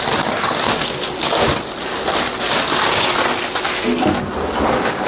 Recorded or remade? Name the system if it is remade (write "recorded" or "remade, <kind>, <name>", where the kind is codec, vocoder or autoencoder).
recorded